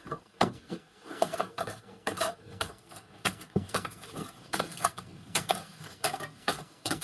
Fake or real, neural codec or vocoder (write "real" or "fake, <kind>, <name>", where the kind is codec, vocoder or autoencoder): fake, codec, SNAC